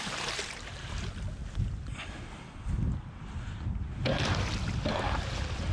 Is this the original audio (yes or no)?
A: yes